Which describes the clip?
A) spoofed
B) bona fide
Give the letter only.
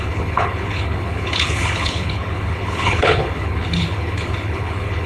A